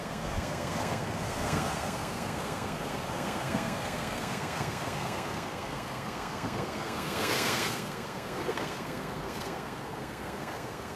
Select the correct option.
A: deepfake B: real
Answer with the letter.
A